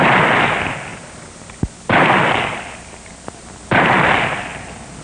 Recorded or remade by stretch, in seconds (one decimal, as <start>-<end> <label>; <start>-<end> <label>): 0.0-5.0 recorded